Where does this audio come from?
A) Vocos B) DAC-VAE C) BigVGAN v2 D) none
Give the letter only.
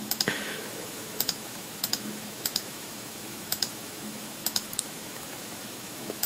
B